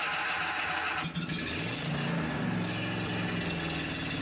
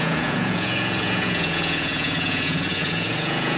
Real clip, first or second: first